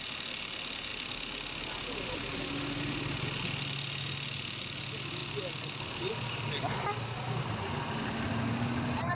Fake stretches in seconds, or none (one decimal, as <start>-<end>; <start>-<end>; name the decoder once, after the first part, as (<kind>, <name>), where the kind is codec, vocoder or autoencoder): none